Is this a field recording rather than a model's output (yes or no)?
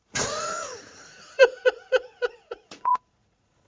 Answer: no